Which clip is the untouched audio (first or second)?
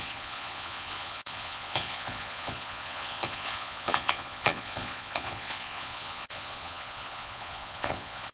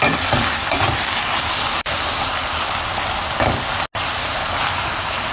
second